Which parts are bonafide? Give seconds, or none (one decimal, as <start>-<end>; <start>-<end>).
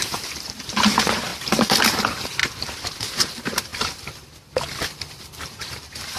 2.4-3.1; 3.7-5.4